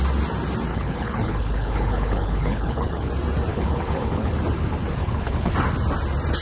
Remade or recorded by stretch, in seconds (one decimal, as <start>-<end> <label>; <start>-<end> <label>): 0.0-0.7 recorded; 0.7-3.1 remade; 3.1-3.5 recorded; 3.5-4.3 remade; 4.3-5.0 recorded; 5.0-5.5 remade; 5.5-6.4 recorded

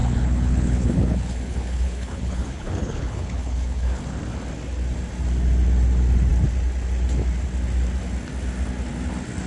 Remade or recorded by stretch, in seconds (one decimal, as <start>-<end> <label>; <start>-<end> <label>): 0.0-4.0 remade; 4.0-9.5 recorded